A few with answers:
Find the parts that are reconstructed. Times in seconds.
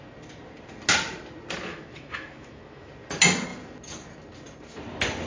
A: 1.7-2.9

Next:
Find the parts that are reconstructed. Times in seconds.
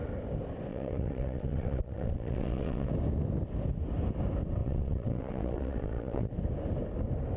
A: 0.7-2.9; 4.6-6.3